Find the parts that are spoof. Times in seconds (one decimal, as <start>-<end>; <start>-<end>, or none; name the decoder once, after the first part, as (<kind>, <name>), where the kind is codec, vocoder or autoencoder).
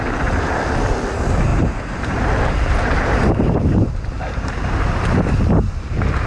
1.5-4.9 (vocoder, BigVGAN v2)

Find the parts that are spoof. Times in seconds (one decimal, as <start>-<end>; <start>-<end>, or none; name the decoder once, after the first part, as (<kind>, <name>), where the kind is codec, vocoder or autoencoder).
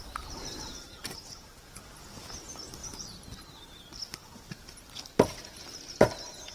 none